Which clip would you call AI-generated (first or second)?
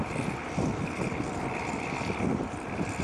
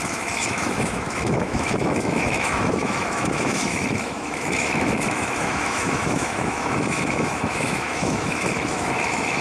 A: second